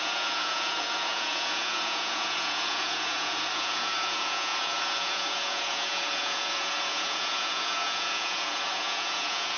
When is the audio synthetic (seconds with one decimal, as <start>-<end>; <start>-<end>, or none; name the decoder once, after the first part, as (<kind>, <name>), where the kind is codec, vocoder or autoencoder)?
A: 0.0-9.6 (vocoder, Vocos)